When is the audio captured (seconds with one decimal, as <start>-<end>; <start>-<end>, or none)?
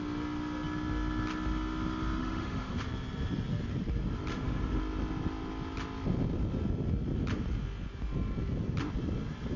0.0-2.2; 2.8-4.3; 4.8-9.6